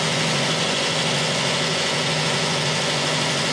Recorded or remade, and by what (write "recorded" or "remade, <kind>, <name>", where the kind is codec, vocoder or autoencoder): remade, vocoder, Vocos